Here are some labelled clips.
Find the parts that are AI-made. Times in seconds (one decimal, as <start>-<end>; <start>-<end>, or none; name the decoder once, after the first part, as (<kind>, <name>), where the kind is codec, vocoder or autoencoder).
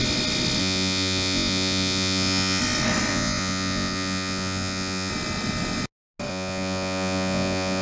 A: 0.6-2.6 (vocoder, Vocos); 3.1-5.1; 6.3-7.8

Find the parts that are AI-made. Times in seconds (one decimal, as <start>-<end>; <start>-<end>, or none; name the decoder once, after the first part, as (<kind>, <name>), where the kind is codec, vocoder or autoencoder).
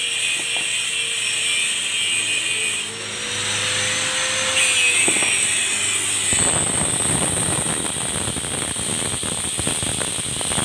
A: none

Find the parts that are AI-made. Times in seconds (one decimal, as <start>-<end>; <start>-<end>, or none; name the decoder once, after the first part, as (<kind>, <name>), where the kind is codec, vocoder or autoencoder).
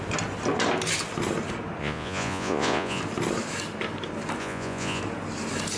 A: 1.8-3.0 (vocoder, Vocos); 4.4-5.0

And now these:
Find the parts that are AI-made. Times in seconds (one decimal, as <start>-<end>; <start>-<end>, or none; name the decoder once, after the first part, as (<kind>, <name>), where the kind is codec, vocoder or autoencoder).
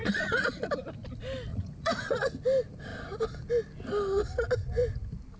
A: 0.0-0.6 (vocoder, Vocos); 1.5-2.3